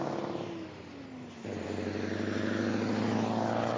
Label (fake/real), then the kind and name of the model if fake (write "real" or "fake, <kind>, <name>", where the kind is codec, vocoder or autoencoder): real